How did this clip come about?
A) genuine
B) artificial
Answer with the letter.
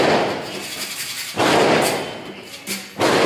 A